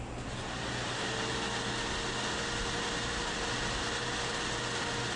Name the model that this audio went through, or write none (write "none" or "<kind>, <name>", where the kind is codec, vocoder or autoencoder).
none